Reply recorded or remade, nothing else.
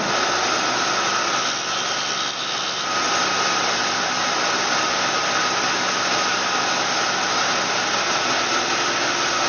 recorded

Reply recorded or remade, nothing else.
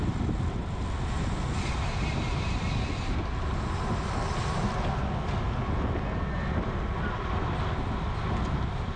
recorded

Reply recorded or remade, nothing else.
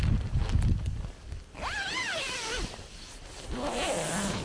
recorded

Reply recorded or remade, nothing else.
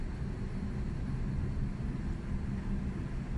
recorded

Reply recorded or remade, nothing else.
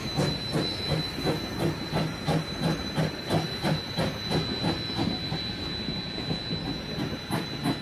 recorded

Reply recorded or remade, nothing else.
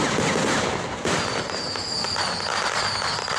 recorded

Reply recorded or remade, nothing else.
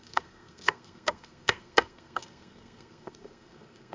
remade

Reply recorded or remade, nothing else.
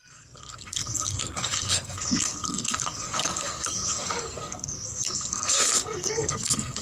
remade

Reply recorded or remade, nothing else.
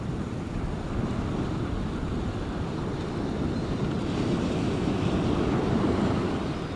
recorded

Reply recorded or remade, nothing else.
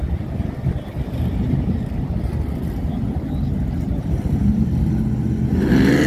recorded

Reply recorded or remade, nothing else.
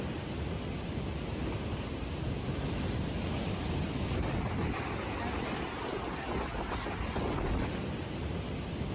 recorded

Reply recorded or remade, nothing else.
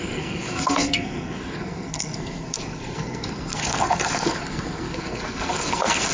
remade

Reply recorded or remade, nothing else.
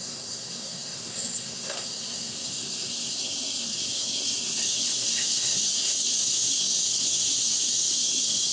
remade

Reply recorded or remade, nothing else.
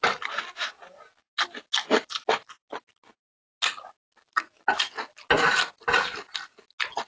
recorded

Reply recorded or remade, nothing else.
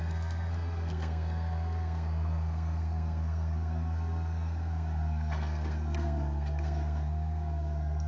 remade